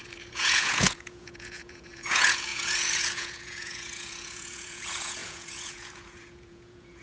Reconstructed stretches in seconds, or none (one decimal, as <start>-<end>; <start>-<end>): 0.0-7.0